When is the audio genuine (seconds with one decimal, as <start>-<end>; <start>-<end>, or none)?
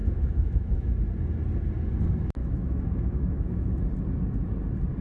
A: 0.9-2.4; 3.7-5.0